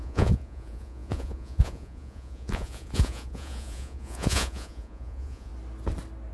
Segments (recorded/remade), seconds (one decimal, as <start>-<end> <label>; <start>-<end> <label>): 0.0-5.5 remade; 5.5-6.3 recorded

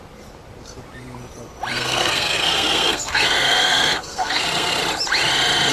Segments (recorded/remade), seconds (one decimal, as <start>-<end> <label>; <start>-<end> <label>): 0.0-1.7 recorded; 1.7-4.8 remade; 4.8-5.7 recorded

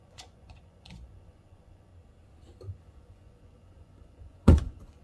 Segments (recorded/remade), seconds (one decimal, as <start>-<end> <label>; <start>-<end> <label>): 0.0-1.9 remade; 1.9-2.8 recorded; 2.8-5.0 remade

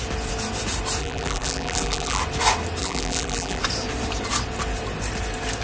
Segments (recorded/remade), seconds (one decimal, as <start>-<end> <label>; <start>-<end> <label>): 0.0-1.0 recorded; 1.0-2.2 remade; 2.2-2.8 recorded; 2.8-3.6 remade; 3.6-5.6 recorded